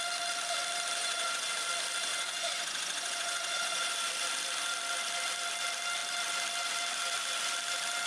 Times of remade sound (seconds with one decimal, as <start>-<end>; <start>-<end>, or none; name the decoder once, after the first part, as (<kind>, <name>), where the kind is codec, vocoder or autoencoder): 1.0-1.5 (vocoder, Vocos); 2.1-3.9